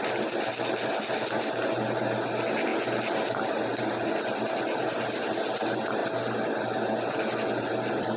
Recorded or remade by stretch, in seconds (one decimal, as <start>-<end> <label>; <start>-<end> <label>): 0.0-8.2 recorded